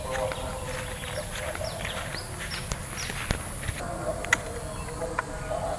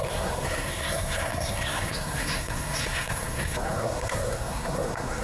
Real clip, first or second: first